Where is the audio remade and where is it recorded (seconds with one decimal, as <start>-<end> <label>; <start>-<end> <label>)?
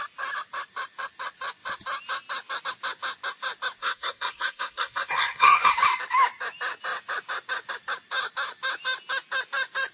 0.0-3.8 recorded; 3.8-5.7 remade; 5.7-9.9 recorded